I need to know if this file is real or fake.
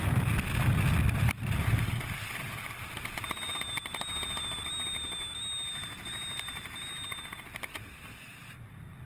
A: real